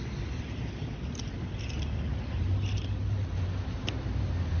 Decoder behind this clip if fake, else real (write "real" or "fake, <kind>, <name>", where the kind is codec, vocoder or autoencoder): real